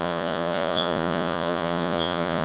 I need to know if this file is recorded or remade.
remade